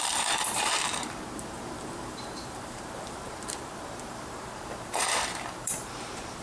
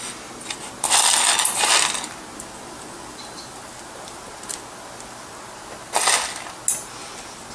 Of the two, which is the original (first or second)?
second